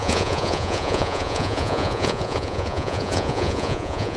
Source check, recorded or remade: remade